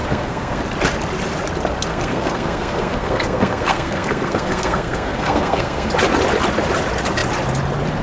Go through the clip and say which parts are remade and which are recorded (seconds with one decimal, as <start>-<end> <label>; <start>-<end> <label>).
0.0-0.6 remade; 0.6-1.9 recorded; 1.9-5.9 remade; 5.9-8.0 recorded